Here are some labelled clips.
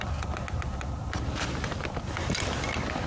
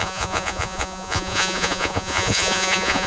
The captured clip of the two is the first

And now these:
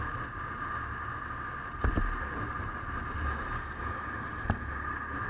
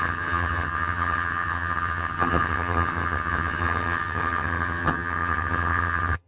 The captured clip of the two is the first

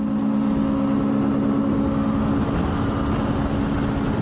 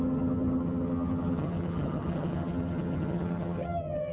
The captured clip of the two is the first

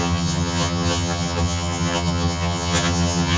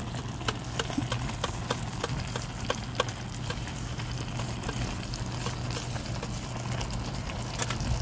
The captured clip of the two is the second